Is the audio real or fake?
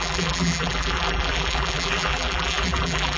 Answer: fake